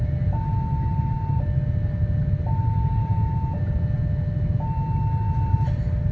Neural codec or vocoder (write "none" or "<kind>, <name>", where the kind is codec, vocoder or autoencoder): none